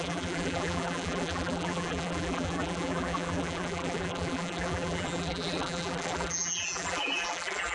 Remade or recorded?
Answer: remade